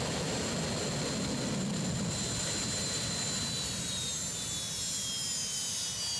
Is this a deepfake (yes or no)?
no